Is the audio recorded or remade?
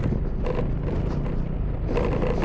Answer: recorded